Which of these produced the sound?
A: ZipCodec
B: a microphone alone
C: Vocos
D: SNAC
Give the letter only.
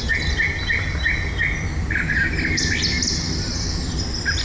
B